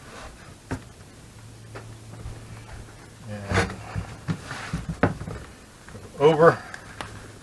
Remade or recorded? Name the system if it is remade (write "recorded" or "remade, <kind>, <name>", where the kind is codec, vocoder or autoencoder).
recorded